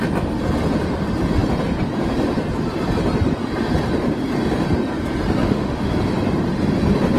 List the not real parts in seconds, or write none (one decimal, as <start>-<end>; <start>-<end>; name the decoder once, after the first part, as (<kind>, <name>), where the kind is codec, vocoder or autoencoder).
5.4-5.9 (autoencoder, DAC-VAE)